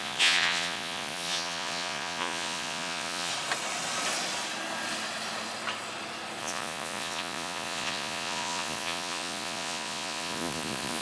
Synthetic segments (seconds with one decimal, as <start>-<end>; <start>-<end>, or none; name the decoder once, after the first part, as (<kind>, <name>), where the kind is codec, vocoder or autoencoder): 0.0-3.3 (vocoder, Vocos); 6.4-11.0